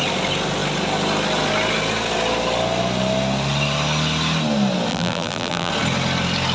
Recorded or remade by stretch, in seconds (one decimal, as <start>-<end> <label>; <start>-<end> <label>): 0.0-4.9 recorded; 4.9-5.7 remade; 5.7-6.5 recorded